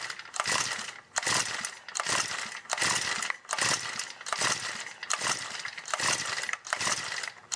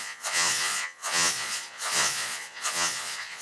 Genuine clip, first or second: first